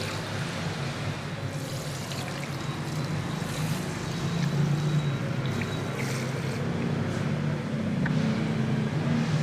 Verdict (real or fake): real